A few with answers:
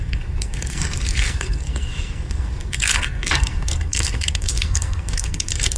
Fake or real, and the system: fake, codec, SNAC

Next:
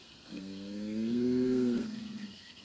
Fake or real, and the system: fake, codec, SNAC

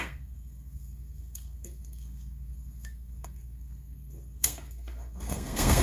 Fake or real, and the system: fake, codec, SNAC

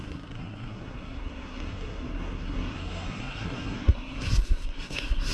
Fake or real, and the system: fake, codec, SNAC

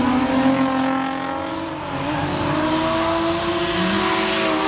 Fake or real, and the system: real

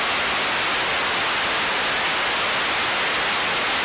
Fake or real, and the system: real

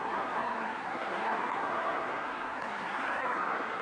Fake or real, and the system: fake, codec, SNAC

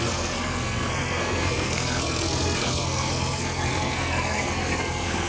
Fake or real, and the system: fake, codec, SNAC